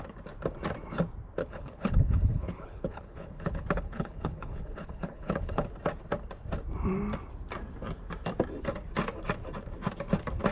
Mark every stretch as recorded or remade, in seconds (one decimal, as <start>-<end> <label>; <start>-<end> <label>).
0.0-1.4 recorded; 1.4-5.7 remade; 5.7-10.5 recorded